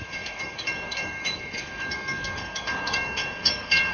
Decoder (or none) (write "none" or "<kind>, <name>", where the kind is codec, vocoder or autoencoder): codec, DAC